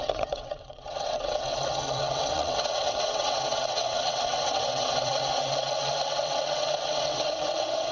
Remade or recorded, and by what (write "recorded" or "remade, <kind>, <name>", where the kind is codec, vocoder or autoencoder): remade, vocoder, WaveNeXt